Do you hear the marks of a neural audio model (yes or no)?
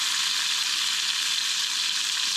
no